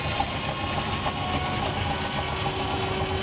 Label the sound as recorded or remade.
recorded